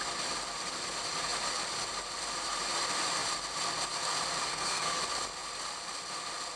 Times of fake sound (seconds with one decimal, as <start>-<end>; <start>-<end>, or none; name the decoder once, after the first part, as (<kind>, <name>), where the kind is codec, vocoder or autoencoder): 4.5-5.0 (codec, SNAC)